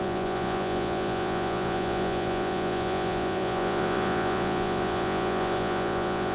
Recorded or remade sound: remade